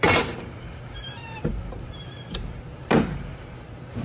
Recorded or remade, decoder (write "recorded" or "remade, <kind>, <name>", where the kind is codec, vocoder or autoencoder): remade, vocoder, BigVGAN v2